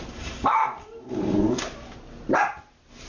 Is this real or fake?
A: real